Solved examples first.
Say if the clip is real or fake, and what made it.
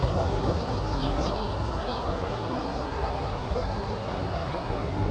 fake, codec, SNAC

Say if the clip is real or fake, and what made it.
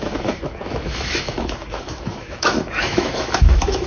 fake, autoencoder, DAC-VAE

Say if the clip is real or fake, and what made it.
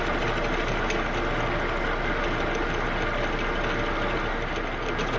real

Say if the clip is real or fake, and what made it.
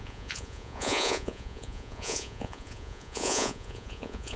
fake, vocoder, Vocos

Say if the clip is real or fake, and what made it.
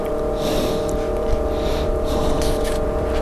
fake, vocoder, BigVGAN v2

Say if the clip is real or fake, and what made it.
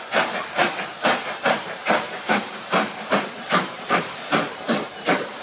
fake, vocoder, BigVGAN v2